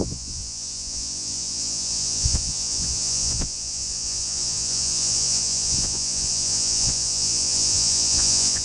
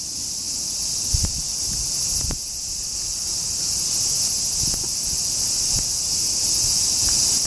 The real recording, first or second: second